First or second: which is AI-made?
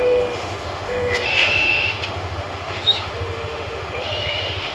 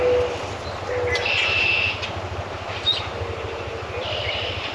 first